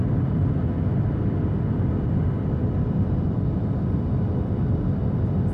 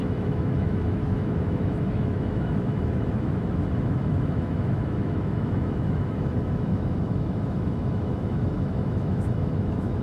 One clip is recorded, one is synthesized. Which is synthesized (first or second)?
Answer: second